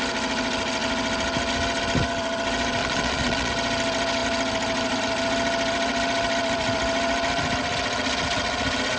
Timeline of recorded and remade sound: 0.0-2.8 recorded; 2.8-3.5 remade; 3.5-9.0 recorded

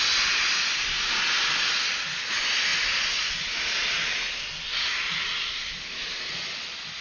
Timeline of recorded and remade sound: 0.0-7.0 recorded

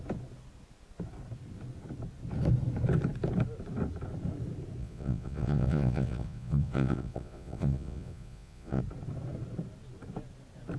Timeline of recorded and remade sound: 0.0-4.8 recorded; 4.8-8.8 remade; 8.8-10.8 recorded

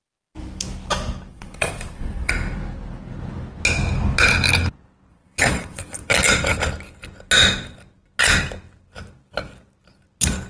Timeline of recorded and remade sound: 0.0-1.3 recorded; 1.3-2.3 remade; 2.3-5.1 recorded; 5.1-6.1 remade; 6.1-10.5 recorded

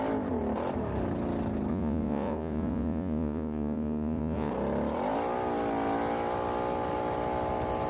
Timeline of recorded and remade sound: 0.0-1.7 recorded; 1.7-4.5 remade; 4.5-7.9 recorded

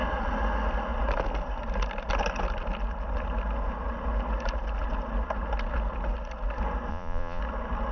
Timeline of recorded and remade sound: 0.0-6.9 recorded; 6.9-7.4 remade; 7.4-7.9 recorded

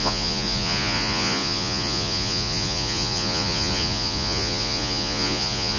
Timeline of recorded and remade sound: 0.0-5.8 remade

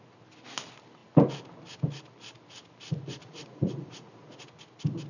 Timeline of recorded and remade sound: 0.0-3.2 recorded; 3.2-4.5 remade; 4.5-5.1 recorded